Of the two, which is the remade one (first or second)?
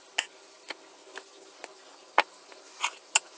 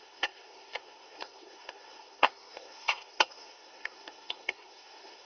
second